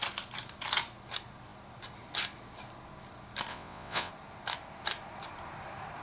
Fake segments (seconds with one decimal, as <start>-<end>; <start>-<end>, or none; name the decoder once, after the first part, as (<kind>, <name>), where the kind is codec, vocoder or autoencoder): 3.5-4.1 (vocoder, WaveNeXt)